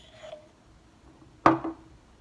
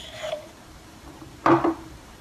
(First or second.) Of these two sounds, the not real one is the second